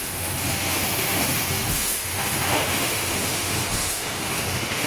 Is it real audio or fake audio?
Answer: fake